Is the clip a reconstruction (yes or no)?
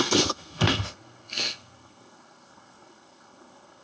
yes